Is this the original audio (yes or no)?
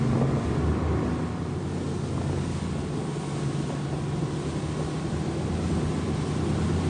yes